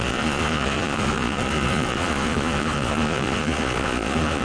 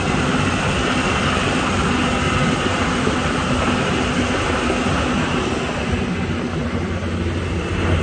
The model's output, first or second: first